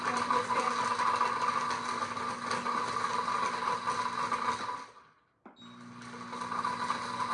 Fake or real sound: real